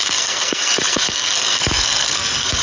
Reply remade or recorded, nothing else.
remade